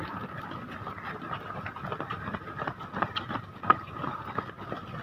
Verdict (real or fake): real